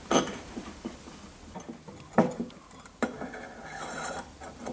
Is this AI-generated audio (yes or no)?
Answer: no